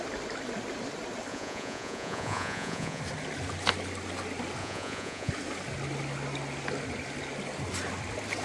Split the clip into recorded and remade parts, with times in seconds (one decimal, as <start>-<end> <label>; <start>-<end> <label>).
0.0-1.3 recorded; 1.3-3.0 remade; 3.0-4.6 recorded; 4.6-5.3 remade; 5.3-8.4 recorded